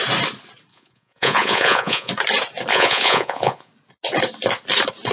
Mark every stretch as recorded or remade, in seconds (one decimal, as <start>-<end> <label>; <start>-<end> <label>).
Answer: 0.0-0.7 recorded; 0.7-2.1 remade; 2.1-2.7 recorded; 2.7-3.7 remade; 3.7-5.1 recorded